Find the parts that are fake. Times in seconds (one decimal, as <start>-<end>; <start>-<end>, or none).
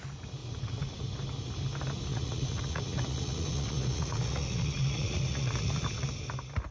0.4-1.1; 2.1-6.1